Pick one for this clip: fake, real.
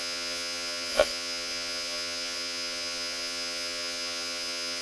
fake